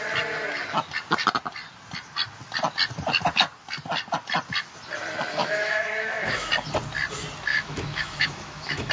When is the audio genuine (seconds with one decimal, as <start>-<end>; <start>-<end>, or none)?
0.0-5.4; 6.5-7.5